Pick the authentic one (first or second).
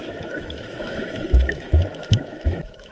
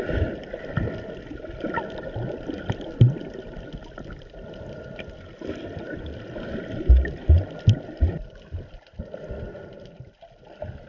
second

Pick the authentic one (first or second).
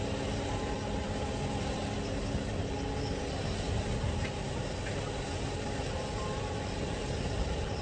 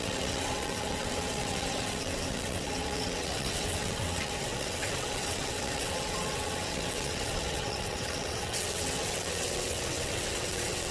first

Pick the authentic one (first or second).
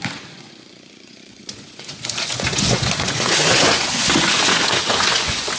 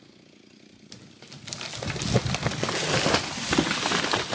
second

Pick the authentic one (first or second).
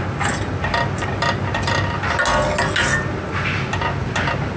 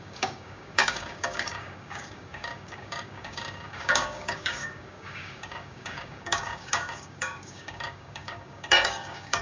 first